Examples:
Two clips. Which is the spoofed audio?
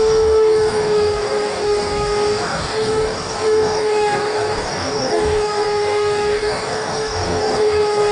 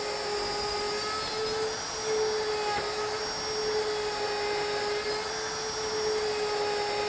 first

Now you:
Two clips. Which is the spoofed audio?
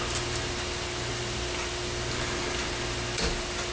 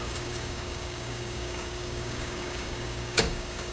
second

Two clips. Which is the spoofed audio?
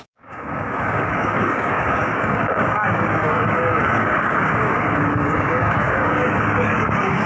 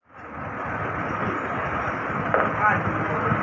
first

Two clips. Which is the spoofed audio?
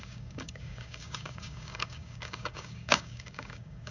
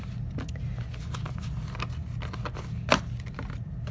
first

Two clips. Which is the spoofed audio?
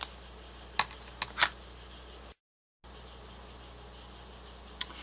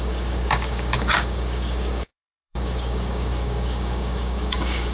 second